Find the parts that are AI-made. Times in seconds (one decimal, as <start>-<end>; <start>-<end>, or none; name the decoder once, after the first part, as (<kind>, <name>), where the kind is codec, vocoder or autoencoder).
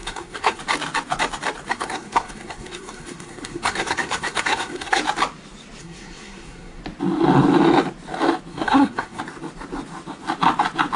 0.0-0.6 (codec, SNAC); 1.7-5.0; 5.8-6.8; 8.5-9.2